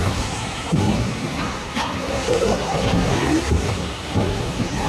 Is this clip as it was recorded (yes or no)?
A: no